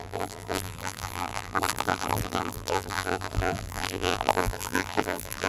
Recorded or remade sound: remade